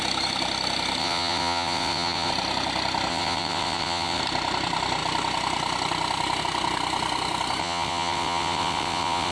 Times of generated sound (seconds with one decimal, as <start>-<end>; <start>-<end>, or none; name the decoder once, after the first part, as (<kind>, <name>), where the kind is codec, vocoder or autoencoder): 1.0-2.3 (vocoder, WaveNeXt); 3.1-4.2; 7.6-9.3